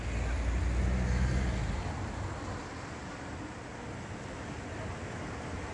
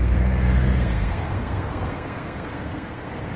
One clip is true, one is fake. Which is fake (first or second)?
second